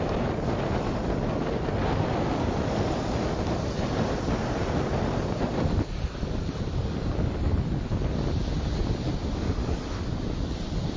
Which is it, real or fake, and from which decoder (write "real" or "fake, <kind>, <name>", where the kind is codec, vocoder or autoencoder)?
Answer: real